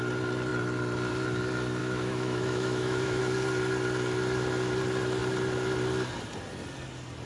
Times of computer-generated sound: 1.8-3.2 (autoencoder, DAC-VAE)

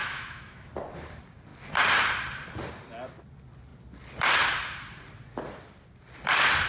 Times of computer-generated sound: 0.0-0.7 (autoencoder, DAC-VAE)